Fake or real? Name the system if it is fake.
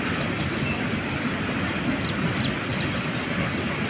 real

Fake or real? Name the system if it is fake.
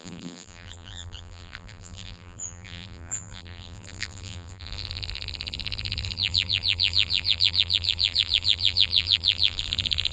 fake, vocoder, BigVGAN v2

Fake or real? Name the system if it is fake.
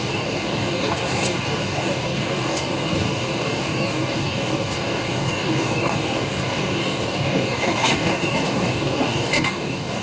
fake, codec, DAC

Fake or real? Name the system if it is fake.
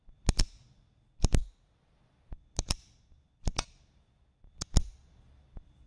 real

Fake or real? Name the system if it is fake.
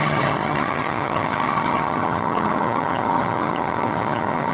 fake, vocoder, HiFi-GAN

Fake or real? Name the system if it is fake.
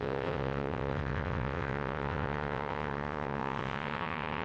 fake, vocoder, WaveNeXt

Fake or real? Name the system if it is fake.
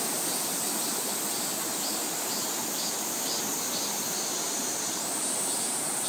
real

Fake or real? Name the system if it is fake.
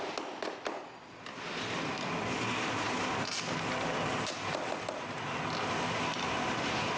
real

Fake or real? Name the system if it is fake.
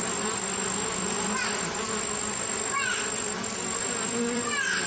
fake, vocoder, BigVGAN v2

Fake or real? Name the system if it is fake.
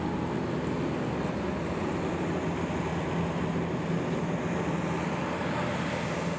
real